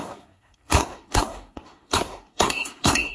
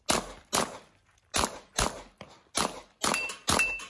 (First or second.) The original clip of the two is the second